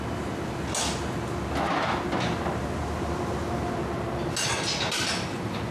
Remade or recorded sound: recorded